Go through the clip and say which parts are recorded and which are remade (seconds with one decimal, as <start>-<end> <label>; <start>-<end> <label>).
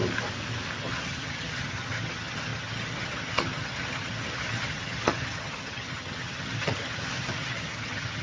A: 0.0-0.8 recorded; 0.8-8.2 remade